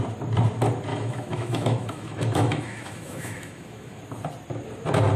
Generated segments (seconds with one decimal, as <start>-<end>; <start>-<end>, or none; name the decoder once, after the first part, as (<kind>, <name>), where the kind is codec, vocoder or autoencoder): 0.9-4.0 (autoencoder, DAC-VAE)